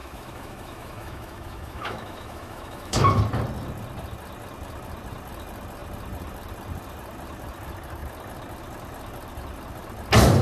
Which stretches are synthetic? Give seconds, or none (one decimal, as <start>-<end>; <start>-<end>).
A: 0.0-3.2